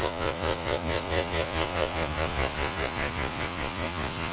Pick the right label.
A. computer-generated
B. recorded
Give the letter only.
A